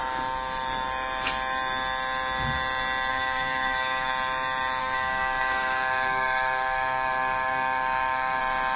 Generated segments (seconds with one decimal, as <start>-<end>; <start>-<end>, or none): 3.1-4.1; 4.8-8.4